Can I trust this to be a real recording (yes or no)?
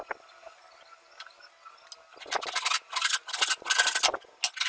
yes